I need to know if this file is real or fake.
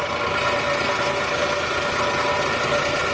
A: real